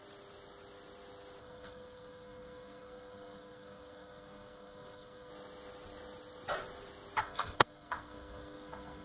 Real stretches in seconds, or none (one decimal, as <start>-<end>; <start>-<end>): 0.0-1.4; 5.3-7.2